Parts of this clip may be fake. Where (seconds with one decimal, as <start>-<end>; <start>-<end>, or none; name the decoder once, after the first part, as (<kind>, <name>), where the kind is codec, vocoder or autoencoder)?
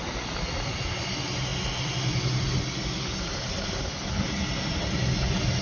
none